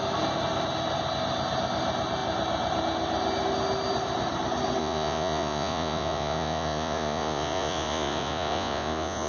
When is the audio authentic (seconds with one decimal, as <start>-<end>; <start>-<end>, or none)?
0.0-4.8